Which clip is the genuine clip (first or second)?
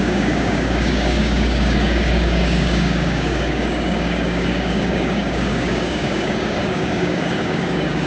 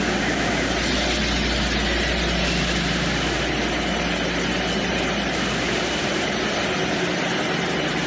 second